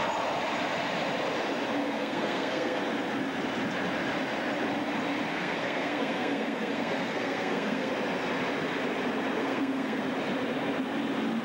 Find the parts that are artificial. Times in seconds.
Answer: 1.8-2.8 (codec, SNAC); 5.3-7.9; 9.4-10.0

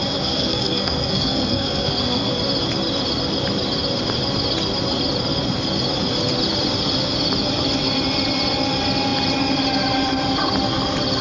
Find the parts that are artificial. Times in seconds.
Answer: 0.0-2.3 (codec, SNAC)

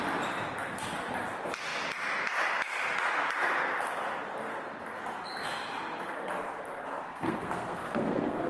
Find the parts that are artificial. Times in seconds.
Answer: 6.9-8.5 (codec, SNAC)

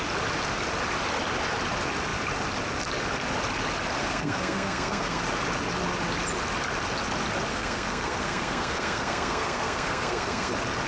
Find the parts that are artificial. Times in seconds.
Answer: 4.0-5.2 (codec, SNAC); 7.5-10.5